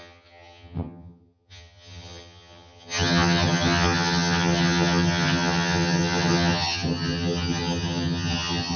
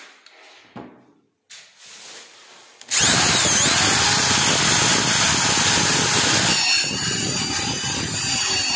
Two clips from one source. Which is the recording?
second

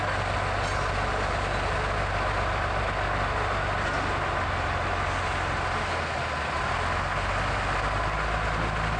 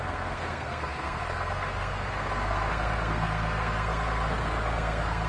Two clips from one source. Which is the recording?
first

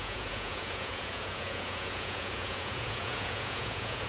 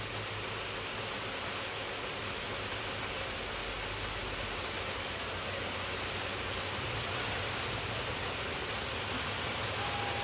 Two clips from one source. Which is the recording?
second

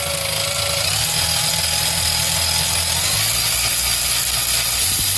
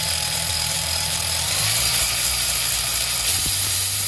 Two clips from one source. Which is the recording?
first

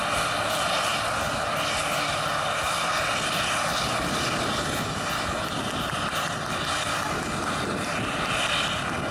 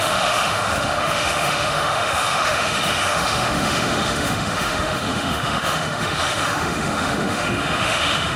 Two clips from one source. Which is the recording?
first